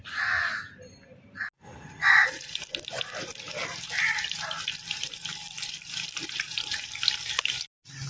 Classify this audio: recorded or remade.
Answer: recorded